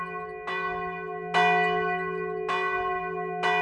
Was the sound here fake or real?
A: real